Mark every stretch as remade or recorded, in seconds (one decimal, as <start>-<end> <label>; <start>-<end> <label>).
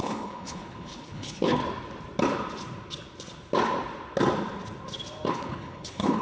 0.0-1.6 remade; 1.6-5.3 recorded; 5.3-6.2 remade